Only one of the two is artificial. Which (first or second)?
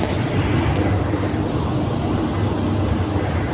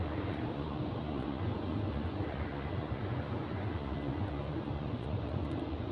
second